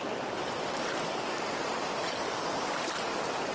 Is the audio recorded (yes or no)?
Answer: no